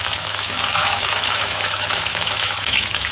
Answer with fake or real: fake